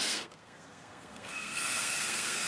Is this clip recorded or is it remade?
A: remade